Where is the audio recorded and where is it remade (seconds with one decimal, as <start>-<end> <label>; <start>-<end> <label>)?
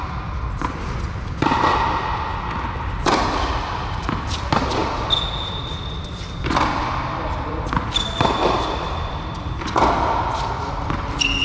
0.0-11.4 recorded